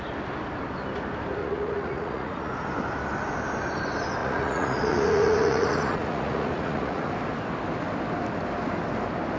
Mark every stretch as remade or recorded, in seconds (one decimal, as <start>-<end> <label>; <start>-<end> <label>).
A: 0.0-1.4 recorded; 1.4-2.5 remade; 2.5-4.2 recorded; 4.2-7.1 remade; 7.1-9.4 recorded